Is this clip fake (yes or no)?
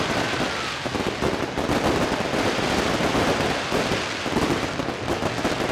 no